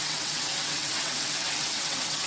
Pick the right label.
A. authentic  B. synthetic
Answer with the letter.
B